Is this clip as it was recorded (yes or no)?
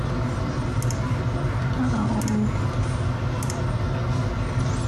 yes